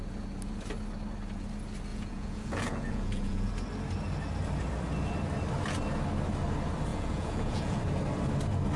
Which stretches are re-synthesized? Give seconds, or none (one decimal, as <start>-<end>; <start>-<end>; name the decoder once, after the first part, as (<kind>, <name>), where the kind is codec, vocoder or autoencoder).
1.9-3.5 (vocoder, Vocos); 6.9-7.8